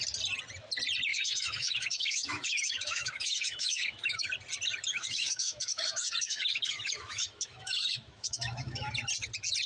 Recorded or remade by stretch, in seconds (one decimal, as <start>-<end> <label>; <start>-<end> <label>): 0.0-1.1 recorded; 1.1-4.3 remade; 4.3-4.9 recorded; 4.9-8.9 remade; 8.9-9.7 recorded

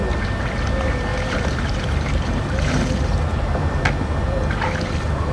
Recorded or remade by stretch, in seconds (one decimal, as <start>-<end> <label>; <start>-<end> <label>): 0.0-1.1 recorded; 1.1-3.8 remade; 3.8-5.3 recorded

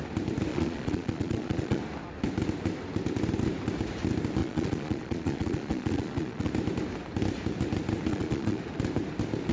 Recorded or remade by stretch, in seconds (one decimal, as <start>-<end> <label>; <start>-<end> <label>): 0.0-0.5 recorded; 0.5-1.8 remade; 1.8-4.4 recorded; 4.4-6.5 remade; 6.5-8.1 recorded; 8.1-8.6 remade; 8.6-9.5 recorded

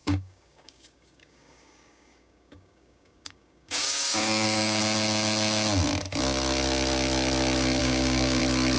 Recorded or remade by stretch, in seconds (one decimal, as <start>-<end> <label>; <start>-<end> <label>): 0.0-4.8 remade; 4.8-7.8 recorded; 7.8-8.4 remade; 8.4-8.8 recorded

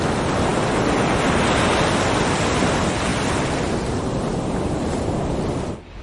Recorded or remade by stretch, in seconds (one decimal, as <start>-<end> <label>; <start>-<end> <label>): 0.0-6.0 recorded

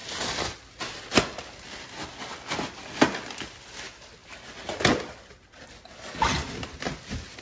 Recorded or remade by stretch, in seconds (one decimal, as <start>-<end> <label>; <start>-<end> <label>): 0.0-7.4 recorded